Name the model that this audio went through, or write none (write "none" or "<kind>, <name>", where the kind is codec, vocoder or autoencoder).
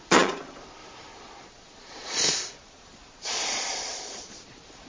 vocoder, Vocos